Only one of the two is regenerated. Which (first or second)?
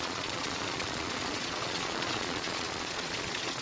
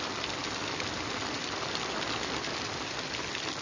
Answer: first